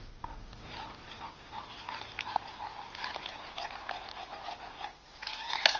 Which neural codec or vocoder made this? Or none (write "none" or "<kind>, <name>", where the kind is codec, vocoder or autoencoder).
none